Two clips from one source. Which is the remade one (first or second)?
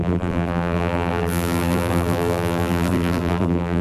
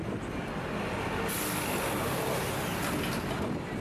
first